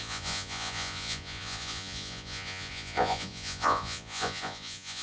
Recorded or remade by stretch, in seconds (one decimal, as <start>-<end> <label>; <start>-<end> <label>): 0.0-5.0 remade